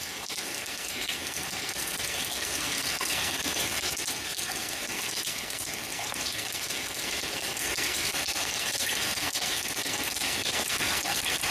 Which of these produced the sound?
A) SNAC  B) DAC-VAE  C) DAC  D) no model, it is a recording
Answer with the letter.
A